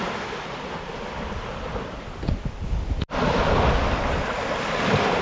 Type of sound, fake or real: real